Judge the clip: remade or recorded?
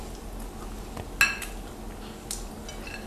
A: recorded